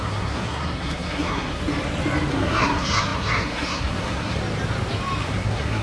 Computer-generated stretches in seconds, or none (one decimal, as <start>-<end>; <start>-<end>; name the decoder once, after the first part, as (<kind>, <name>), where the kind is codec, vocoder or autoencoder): 0.0-1.6 (codec, SNAC); 2.3-4.4; 5.3-5.8